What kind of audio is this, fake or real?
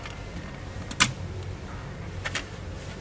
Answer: real